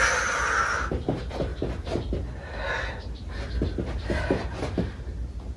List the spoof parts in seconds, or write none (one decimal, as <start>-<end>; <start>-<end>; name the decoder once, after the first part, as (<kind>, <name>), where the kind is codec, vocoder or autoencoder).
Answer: none